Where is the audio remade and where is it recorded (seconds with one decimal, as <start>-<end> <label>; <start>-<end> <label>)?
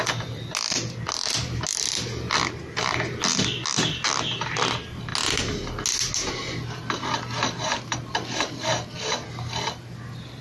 0.0-10.4 recorded